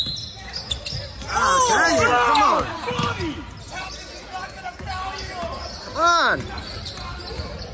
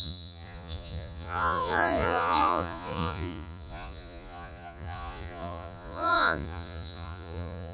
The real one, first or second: first